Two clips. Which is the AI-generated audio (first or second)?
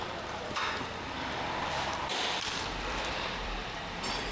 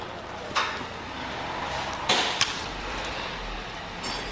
first